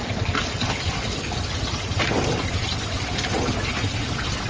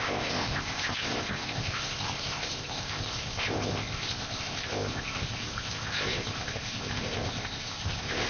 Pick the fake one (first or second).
second